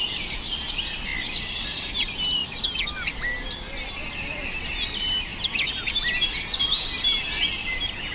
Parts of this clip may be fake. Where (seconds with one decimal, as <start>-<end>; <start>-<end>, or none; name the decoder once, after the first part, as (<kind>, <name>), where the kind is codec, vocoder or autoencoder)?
none